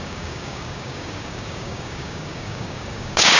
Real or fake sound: fake